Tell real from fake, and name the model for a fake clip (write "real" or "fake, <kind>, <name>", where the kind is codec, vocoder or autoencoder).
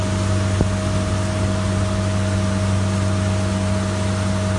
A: real